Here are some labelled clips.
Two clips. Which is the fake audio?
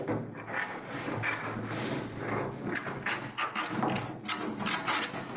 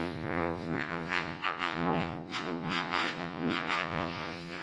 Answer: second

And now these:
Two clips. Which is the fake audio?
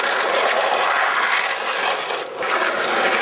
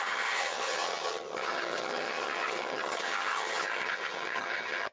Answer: second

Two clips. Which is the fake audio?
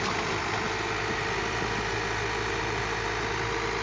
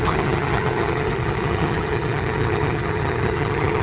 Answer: second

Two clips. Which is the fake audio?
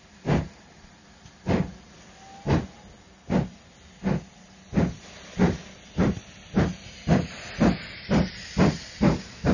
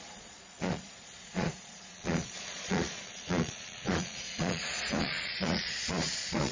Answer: second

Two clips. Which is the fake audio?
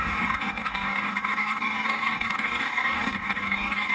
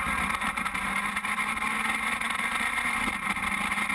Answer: first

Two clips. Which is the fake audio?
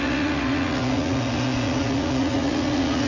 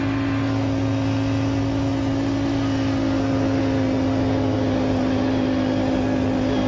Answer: first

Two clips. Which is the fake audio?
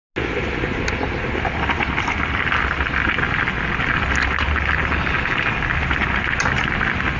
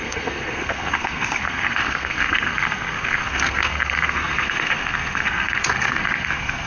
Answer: second